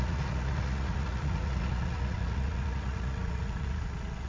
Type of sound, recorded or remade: remade